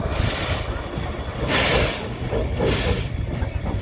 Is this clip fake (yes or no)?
no